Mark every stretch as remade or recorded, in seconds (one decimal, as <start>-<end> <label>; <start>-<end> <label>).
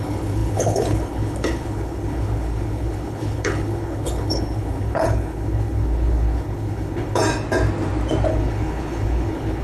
0.0-7.2 remade; 7.2-8.3 recorded; 8.3-9.6 remade